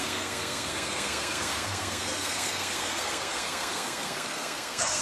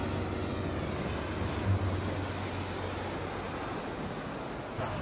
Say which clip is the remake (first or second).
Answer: first